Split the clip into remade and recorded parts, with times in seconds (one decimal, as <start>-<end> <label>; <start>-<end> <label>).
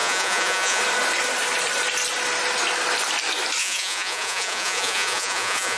0.0-0.8 remade; 0.8-3.6 recorded; 3.6-5.8 remade